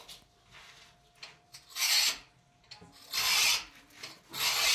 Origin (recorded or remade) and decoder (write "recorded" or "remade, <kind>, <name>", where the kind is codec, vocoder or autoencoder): recorded